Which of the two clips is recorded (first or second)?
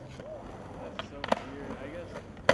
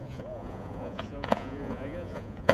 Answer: first